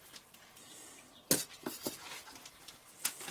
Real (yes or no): yes